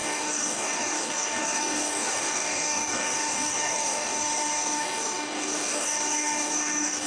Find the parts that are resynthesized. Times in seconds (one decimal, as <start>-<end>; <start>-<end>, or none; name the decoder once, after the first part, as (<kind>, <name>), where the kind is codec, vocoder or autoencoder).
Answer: 0.0-7.1 (codec, DAC)